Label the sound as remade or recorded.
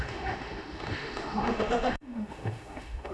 remade